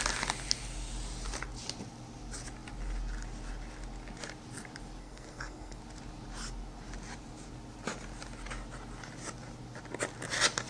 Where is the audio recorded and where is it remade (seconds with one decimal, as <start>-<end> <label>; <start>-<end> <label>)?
0.0-5.0 recorded; 5.0-5.8 remade; 5.8-10.7 recorded